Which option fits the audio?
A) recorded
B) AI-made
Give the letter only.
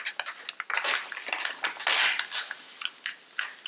A